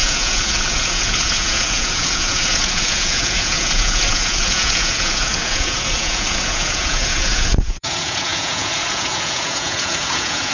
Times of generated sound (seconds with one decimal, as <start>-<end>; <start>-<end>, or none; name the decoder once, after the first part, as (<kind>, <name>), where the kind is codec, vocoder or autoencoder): 0.0-10.5 (vocoder, Vocos)